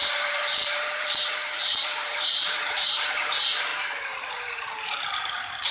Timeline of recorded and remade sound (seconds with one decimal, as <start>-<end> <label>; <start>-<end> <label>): 0.0-3.7 remade; 3.7-4.3 recorded; 4.3-5.7 remade